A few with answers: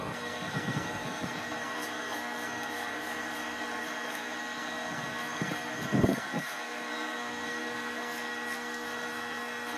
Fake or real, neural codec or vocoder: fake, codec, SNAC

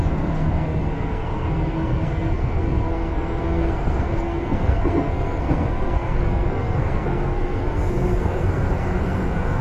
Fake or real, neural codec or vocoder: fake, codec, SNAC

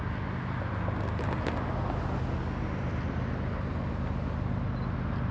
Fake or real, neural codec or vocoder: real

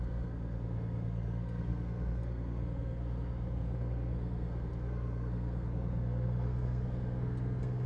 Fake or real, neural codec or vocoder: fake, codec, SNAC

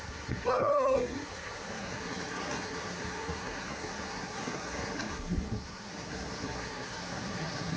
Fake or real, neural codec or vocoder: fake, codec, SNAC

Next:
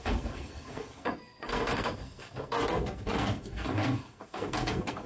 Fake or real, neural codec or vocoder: fake, codec, SNAC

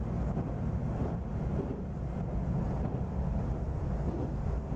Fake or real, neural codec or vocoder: real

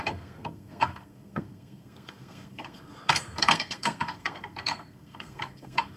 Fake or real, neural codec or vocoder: fake, codec, SNAC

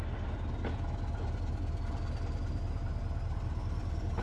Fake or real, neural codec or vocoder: real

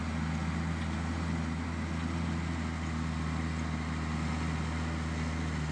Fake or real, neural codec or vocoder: real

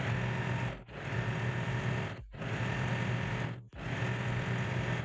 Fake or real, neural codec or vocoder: real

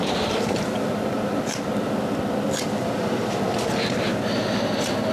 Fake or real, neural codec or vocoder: real